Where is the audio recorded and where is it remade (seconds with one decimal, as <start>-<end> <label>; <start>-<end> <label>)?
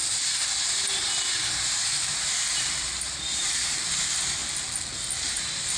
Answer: 0.0-1.5 recorded; 1.5-4.4 remade; 4.4-5.3 recorded; 5.3-5.8 remade